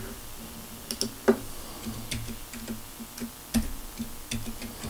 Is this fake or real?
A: real